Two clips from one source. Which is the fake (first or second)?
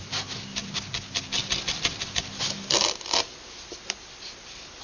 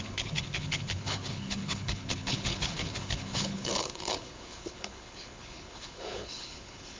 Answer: second